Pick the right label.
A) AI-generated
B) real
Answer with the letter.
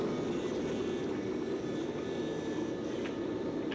B